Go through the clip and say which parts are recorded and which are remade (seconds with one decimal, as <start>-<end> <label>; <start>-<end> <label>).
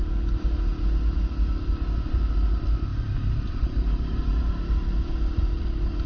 0.0-2.9 recorded; 2.9-5.6 remade; 5.6-6.1 recorded